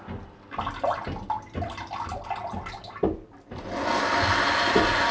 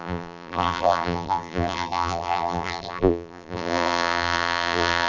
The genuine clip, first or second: first